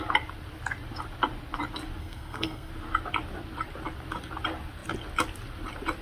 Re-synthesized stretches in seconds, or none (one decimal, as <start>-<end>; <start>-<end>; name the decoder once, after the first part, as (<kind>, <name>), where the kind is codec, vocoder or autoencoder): 2.0-2.7 (codec, SNAC)